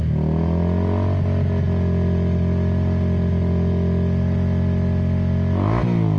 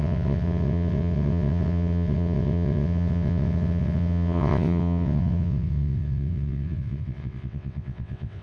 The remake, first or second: second